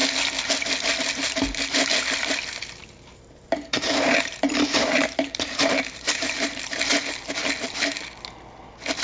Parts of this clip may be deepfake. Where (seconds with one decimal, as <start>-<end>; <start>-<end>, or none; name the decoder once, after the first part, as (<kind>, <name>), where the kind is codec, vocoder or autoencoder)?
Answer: 2.8-6.9 (vocoder, BigVGAN v2)